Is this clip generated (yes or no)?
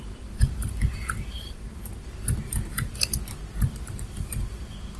yes